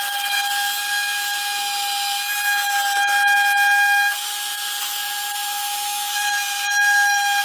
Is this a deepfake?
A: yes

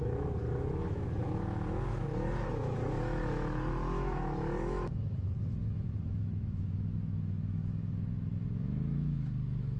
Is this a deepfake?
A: yes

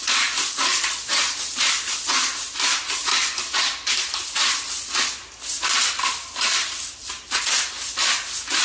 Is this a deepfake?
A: no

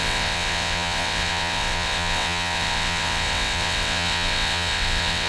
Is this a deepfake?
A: yes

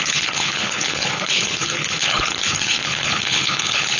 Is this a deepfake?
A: yes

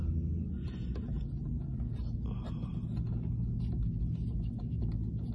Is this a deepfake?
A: no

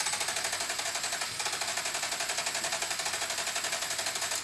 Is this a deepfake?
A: no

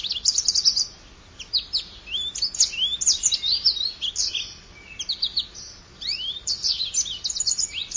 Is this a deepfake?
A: no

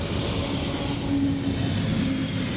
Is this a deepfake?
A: no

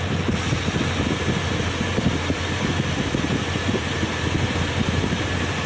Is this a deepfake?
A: no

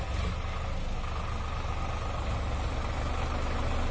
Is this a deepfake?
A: no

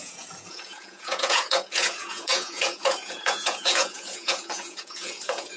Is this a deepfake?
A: yes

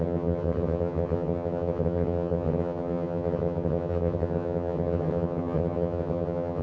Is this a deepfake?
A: yes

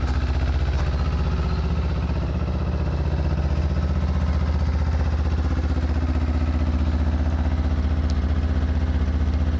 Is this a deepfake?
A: no